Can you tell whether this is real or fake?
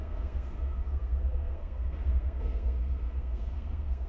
fake